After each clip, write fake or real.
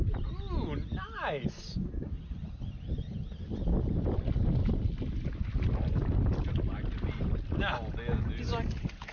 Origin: real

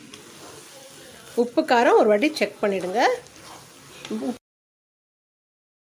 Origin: real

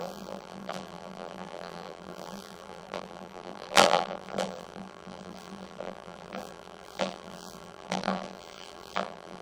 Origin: fake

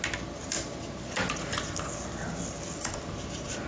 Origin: real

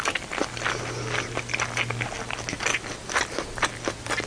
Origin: real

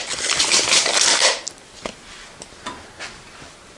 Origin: real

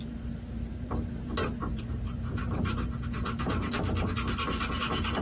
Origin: fake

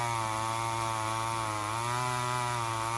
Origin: real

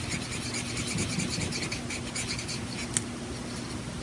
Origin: real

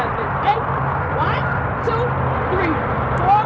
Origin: real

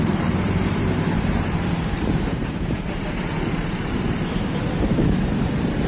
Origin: fake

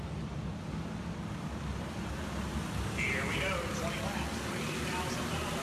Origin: real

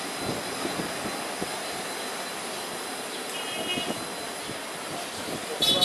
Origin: real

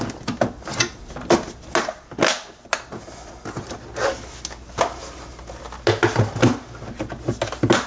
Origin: real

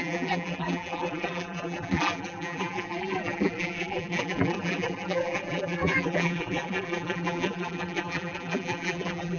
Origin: fake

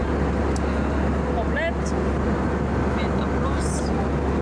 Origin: real